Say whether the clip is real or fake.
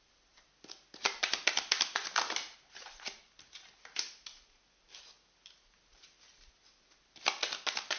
real